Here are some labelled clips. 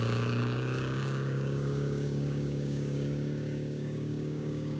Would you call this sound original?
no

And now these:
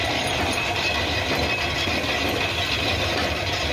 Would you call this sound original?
no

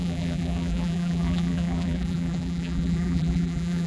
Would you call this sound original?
no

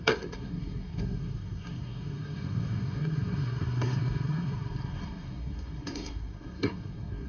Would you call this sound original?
no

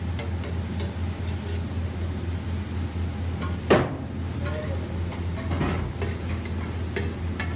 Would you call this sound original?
yes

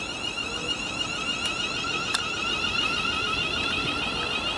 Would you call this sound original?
yes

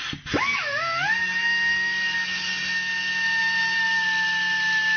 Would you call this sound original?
yes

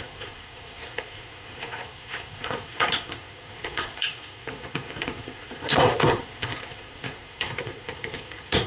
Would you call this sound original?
no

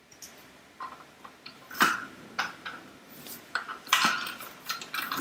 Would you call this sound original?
no